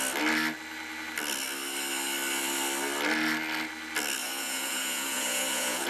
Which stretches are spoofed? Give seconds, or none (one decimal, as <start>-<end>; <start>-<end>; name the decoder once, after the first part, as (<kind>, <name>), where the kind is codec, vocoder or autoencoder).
4.2-5.9 (vocoder, Vocos)